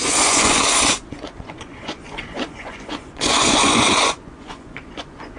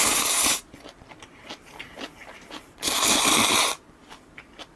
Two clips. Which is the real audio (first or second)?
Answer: second